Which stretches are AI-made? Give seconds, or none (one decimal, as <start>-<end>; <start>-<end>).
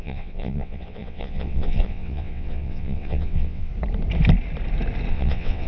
0.0-3.7; 5.1-5.7